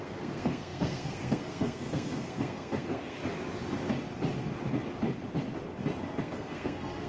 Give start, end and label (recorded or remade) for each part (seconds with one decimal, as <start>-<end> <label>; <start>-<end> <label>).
0.0-3.2 remade; 3.2-6.2 recorded; 6.2-7.1 remade